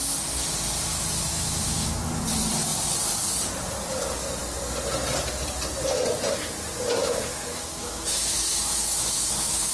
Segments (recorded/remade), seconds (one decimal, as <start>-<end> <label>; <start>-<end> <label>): 0.0-1.3 recorded; 1.3-2.0 remade; 2.0-7.0 recorded; 7.0-9.7 remade